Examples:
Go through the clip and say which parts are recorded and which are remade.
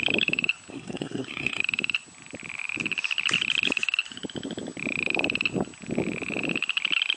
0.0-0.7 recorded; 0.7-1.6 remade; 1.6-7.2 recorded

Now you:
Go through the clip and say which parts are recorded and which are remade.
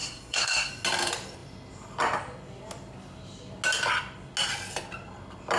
0.0-0.7 remade; 0.7-5.6 recorded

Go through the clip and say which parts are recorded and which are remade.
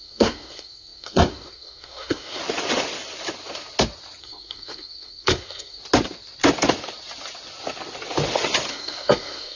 0.0-2.4 remade; 2.4-4.2 recorded; 4.2-5.8 remade; 5.8-8.7 recorded; 8.7-9.6 remade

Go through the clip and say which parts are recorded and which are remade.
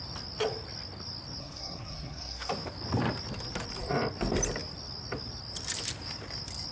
0.0-1.4 recorded; 1.4-2.5 remade; 2.5-6.7 recorded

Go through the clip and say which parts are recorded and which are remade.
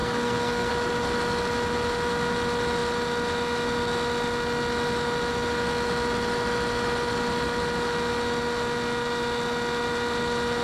0.0-0.7 remade; 0.7-10.6 recorded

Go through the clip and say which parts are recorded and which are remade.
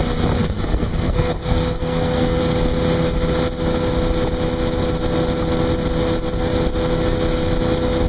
0.0-0.4 recorded; 0.4-2.4 remade; 2.4-8.1 recorded